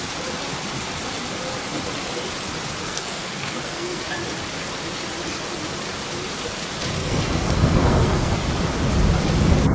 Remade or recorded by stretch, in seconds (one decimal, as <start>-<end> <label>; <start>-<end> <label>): 0.0-2.8 recorded; 2.8-4.0 remade; 4.0-7.0 recorded; 7.0-8.5 remade; 8.5-9.7 recorded